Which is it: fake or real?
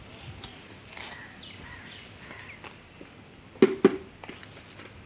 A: real